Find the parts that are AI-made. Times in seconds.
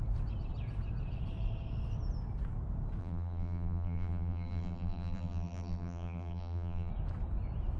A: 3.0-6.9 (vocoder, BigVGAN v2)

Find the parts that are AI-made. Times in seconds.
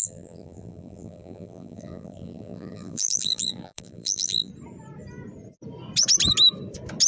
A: 0.0-4.5 (vocoder, BigVGAN v2)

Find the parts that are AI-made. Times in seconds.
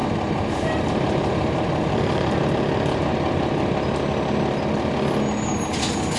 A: 0.0-2.5 (vocoder, BigVGAN v2)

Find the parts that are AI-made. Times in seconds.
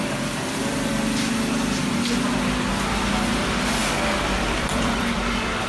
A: 0.0-0.9 (vocoder, BigVGAN v2); 2.7-5.7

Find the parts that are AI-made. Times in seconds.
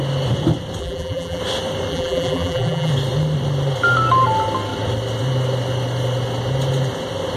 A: 0.8-1.4 (vocoder, BigVGAN v2); 1.9-2.9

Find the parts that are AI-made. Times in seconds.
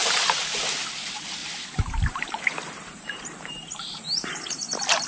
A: 0.0-0.6 (vocoder, BigVGAN v2); 1.4-4.5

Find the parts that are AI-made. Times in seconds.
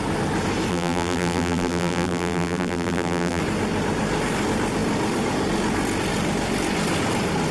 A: 0.7-3.4 (vocoder, BigVGAN v2)